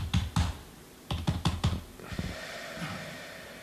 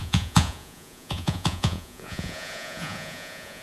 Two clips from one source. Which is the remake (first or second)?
second